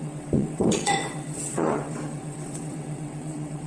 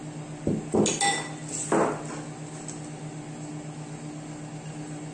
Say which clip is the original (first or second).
second